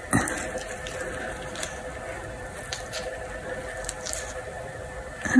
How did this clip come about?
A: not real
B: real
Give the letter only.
B